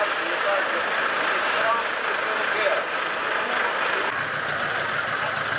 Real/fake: real